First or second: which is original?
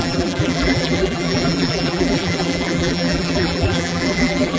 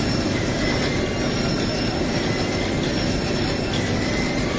second